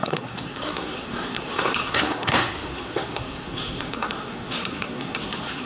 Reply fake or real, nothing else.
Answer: fake